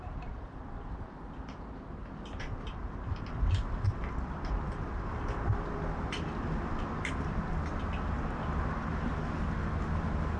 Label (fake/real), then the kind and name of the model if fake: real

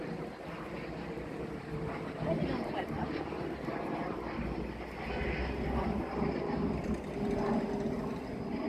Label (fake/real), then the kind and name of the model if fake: real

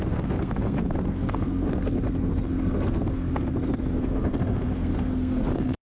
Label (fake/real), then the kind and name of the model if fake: fake, codec, SNAC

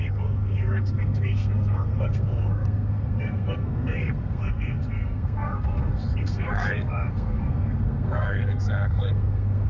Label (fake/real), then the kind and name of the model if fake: fake, codec, SNAC